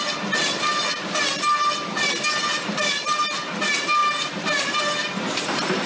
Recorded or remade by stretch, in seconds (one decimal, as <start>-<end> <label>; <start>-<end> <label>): 0.0-4.0 recorded; 4.0-4.8 remade; 4.8-5.9 recorded